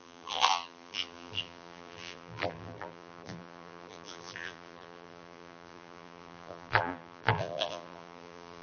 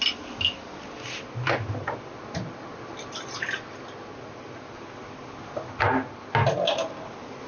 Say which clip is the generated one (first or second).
first